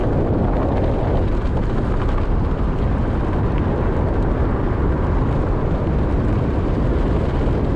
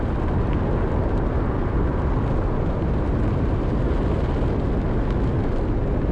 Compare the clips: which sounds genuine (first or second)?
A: second